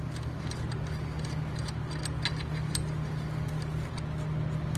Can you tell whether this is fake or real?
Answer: real